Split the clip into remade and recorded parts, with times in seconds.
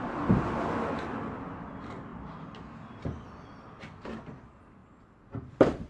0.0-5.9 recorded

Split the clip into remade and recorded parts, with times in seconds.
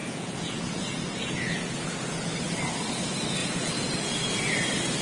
0.0-2.4 remade; 2.4-3.4 recorded; 3.4-4.4 remade; 4.4-5.0 recorded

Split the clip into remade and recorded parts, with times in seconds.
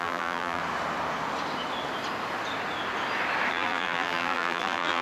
0.0-0.6 remade; 0.6-3.5 recorded; 3.5-5.0 remade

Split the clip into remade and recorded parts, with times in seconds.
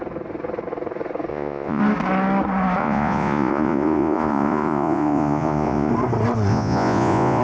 0.0-1.3 recorded; 1.3-1.8 remade; 1.8-2.8 recorded; 2.8-5.9 remade; 5.9-6.5 recorded; 6.5-7.4 remade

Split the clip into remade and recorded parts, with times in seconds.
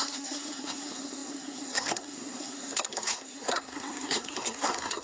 0.0-5.0 remade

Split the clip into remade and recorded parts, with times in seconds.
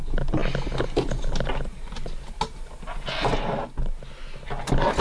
0.0-5.0 recorded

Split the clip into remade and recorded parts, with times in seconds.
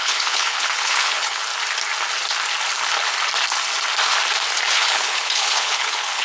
0.0-1.5 remade; 1.5-4.7 recorded; 4.7-6.2 remade